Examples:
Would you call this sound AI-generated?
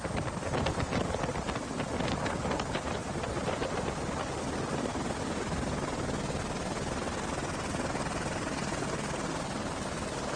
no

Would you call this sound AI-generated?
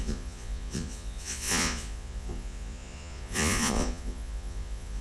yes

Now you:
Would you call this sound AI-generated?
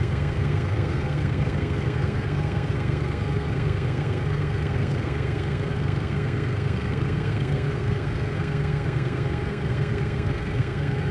yes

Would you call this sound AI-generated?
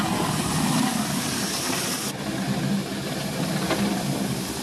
no